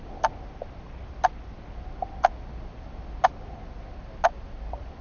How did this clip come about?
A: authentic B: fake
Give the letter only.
A